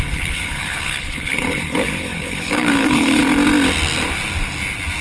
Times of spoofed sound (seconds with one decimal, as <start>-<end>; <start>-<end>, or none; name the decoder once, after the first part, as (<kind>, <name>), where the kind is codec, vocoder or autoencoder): 0.0-3.2 (codec, HILCodec)